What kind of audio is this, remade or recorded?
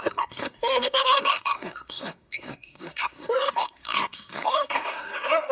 remade